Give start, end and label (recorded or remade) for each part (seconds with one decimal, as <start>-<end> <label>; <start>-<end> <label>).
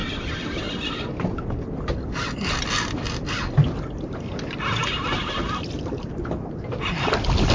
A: 0.0-7.5 recorded